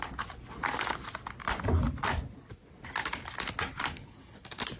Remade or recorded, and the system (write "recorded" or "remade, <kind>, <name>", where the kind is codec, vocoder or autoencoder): recorded